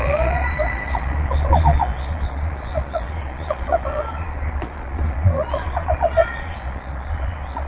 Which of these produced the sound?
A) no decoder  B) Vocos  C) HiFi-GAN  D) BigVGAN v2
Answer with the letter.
B